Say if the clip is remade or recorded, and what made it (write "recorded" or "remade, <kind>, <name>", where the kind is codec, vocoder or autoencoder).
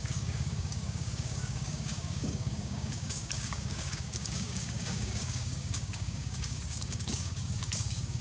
remade, codec, DAC